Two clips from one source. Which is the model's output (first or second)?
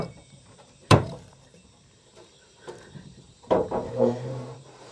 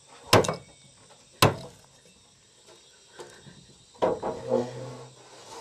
first